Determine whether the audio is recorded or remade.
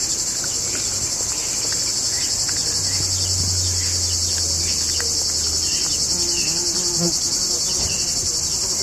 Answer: recorded